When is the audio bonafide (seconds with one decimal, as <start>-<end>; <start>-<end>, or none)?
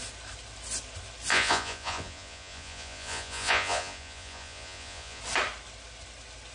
0.0-1.3; 5.2-6.5